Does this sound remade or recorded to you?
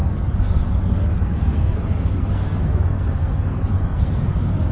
remade